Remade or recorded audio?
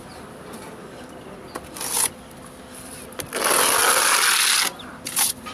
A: recorded